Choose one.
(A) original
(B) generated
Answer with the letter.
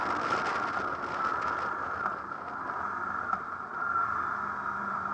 A